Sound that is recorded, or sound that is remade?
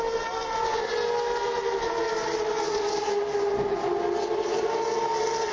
recorded